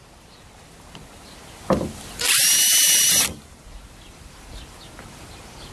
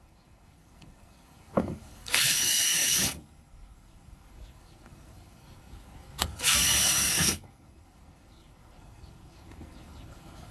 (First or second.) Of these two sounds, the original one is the first